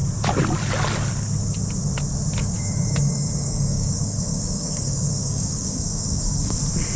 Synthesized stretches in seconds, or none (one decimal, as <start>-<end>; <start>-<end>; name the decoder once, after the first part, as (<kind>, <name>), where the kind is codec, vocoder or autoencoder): 2.4-6.6 (codec, DAC)